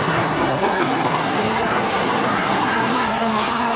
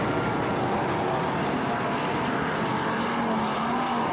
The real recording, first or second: second